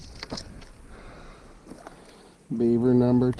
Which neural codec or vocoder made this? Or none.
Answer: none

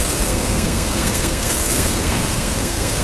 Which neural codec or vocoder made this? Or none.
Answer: codec, SNAC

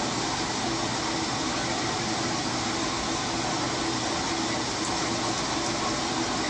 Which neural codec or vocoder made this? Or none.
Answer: none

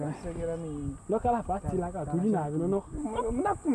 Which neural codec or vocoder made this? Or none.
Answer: none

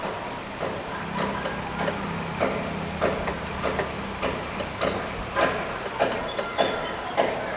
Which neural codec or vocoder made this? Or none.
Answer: none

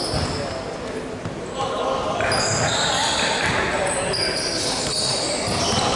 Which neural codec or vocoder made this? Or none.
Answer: none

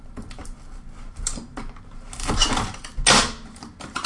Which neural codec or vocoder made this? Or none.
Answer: none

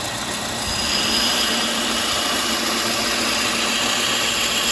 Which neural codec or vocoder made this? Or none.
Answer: none